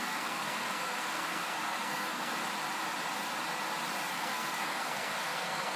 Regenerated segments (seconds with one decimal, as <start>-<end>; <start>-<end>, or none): 0.0-2.3; 4.1-5.8